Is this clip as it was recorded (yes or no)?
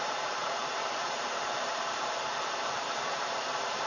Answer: no